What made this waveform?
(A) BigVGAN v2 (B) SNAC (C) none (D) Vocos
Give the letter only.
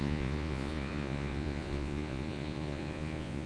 D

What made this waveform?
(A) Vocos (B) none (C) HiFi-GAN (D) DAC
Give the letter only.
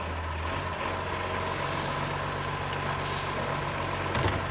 B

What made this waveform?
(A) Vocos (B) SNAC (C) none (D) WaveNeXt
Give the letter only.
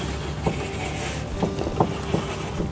C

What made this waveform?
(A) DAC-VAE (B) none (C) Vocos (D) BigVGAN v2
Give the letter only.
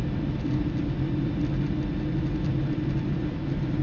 B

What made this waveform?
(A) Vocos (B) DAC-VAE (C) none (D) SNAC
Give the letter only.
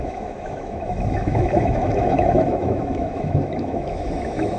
B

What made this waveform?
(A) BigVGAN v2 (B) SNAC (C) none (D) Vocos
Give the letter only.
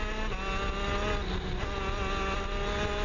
C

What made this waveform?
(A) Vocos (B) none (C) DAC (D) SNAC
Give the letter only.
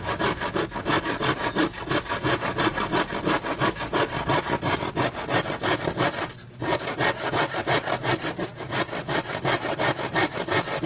B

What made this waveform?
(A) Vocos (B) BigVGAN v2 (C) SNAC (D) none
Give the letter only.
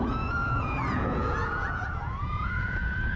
A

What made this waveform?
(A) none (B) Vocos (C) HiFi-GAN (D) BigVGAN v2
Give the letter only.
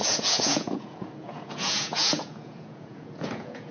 B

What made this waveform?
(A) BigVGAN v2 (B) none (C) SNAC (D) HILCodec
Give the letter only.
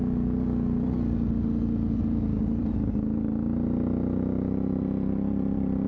A